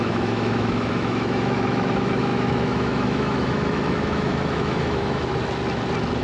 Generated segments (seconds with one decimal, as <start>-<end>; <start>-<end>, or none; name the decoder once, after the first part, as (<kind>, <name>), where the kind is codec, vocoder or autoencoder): 0.0-5.3 (autoencoder, DAC-VAE)